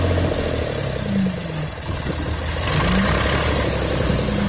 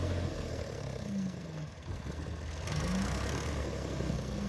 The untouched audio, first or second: first